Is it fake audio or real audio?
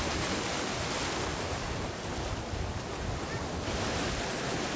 real